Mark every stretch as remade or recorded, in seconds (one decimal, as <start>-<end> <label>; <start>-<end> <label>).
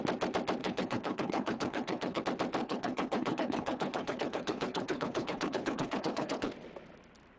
0.0-0.6 recorded; 0.6-2.2 remade; 2.2-2.6 recorded; 2.6-6.5 remade; 6.5-7.4 recorded